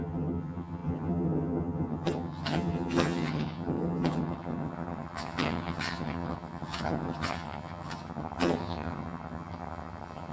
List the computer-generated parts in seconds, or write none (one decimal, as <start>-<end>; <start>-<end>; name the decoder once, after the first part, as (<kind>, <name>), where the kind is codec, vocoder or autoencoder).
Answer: 0.0-10.3 (vocoder, HiFi-GAN)